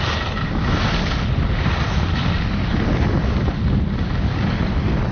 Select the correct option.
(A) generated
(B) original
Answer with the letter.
B